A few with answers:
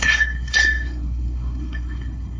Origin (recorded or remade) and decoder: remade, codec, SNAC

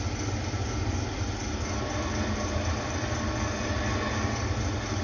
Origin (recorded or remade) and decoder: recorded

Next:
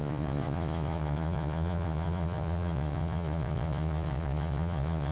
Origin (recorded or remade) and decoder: remade, vocoder, Vocos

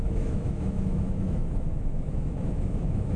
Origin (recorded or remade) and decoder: remade, autoencoder, DAC-VAE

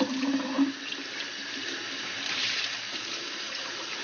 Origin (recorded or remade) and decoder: remade, vocoder, BigVGAN v2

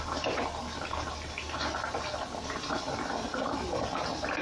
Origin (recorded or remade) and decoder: recorded